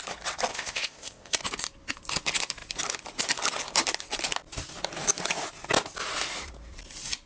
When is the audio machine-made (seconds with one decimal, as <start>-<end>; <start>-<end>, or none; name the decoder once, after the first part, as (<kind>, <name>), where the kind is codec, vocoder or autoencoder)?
0.5-1.4 (codec, ZipCodec)